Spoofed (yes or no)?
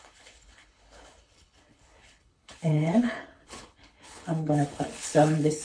yes